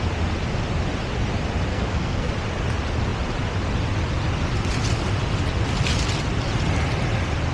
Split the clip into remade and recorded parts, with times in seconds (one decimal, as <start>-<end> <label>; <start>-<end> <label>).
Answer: 0.0-1.7 recorded; 1.7-2.3 remade; 2.3-7.5 recorded